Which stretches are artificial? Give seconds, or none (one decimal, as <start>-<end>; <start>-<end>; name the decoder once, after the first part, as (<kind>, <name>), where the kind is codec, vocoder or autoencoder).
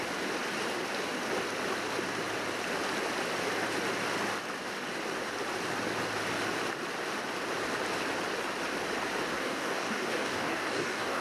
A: 9.4-11.2 (codec, DAC)